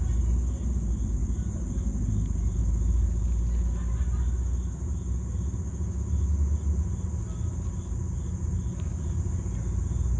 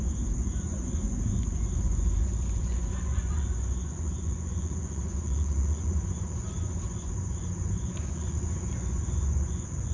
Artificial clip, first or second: second